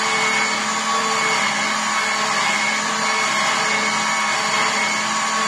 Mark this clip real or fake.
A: real